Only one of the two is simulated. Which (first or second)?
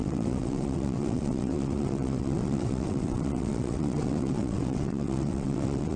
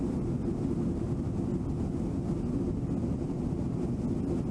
first